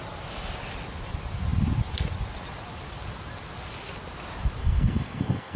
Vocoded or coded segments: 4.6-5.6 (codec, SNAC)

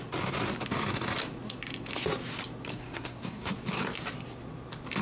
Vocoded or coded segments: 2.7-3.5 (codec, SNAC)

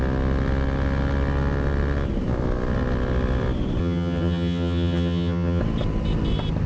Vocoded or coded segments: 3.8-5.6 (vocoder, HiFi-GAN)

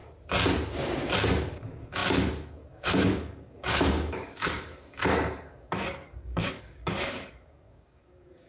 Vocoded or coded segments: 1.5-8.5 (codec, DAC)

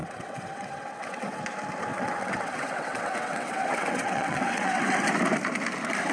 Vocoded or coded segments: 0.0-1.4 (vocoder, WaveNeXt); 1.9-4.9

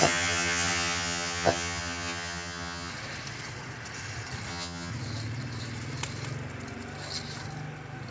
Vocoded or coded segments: 0.0-2.9 (vocoder, HiFi-GAN); 4.5-4.9

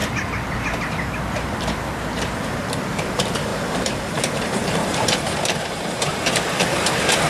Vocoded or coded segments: 1.3-7.3 (vocoder, BigVGAN v2)